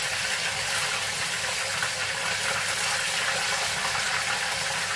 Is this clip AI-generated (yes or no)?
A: no